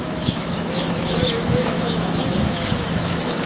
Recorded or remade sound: remade